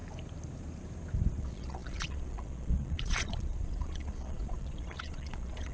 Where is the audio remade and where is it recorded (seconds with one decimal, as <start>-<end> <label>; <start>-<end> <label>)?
0.0-1.4 recorded; 1.4-5.7 remade